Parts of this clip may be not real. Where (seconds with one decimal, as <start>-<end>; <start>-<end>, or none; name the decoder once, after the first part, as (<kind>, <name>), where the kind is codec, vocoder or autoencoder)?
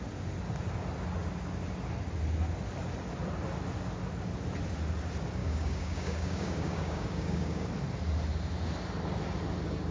5.4-7.7 (codec, DAC)